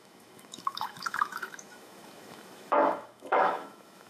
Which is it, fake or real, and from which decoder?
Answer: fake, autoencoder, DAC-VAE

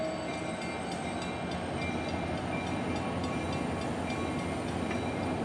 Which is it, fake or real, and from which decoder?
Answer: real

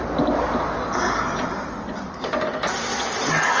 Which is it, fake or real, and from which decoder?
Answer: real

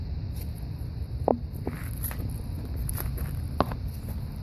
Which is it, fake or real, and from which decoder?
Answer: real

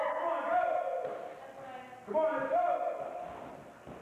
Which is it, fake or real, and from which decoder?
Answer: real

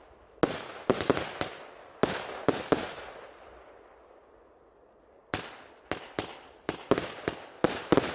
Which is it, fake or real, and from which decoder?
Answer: real